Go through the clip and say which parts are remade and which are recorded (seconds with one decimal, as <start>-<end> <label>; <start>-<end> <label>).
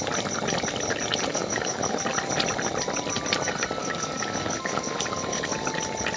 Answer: 0.0-1.3 recorded; 1.3-2.0 remade; 2.0-3.8 recorded; 3.8-5.7 remade; 5.7-6.2 recorded